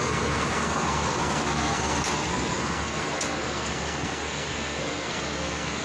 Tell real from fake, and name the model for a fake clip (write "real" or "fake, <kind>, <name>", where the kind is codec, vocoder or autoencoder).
fake, codec, SNAC